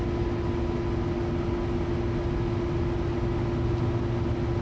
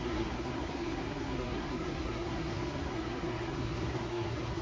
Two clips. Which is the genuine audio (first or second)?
first